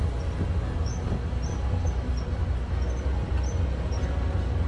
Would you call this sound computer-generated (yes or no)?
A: no